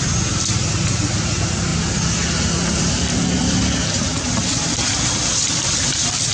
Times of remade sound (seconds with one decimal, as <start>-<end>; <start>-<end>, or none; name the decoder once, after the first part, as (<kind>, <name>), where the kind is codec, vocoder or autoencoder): none